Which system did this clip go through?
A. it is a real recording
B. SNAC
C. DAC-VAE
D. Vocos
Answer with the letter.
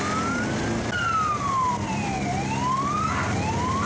A